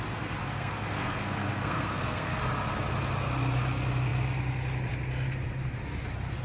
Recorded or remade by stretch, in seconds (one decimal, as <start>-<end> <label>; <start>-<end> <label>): 0.0-0.4 recorded; 0.4-2.4 remade; 2.4-6.4 recorded

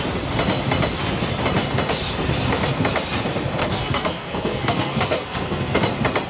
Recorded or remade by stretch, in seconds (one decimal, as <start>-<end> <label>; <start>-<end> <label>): 0.0-3.6 recorded; 3.6-5.8 remade; 5.8-6.3 recorded

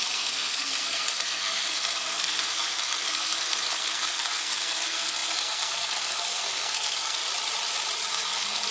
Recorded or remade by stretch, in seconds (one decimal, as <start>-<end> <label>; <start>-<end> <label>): 0.0-7.2 remade; 7.2-8.1 recorded; 8.1-8.7 remade

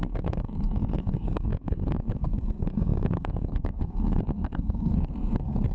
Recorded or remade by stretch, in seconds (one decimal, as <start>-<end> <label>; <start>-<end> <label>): 0.0-5.7 remade

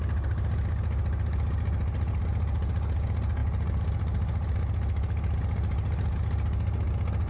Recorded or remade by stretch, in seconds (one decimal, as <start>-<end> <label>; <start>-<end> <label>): 0.0-7.3 recorded